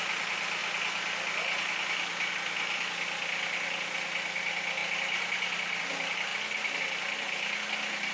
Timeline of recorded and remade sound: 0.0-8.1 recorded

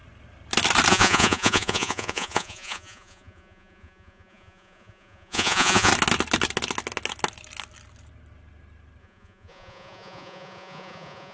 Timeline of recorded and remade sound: 0.0-0.9 recorded; 0.9-5.9 remade; 5.9-9.0 recorded; 9.0-11.3 remade

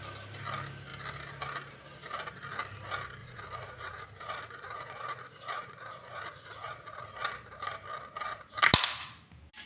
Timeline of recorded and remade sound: 0.0-3.2 recorded; 3.2-7.1 remade; 7.1-9.7 recorded

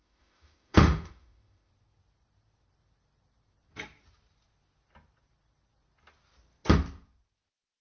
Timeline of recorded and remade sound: 0.0-1.7 remade; 1.7-7.8 recorded